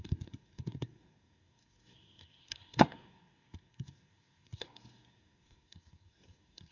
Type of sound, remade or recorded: remade